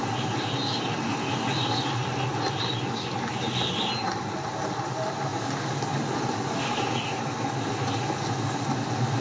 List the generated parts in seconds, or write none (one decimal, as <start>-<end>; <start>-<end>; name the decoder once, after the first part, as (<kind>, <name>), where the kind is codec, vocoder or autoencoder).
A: none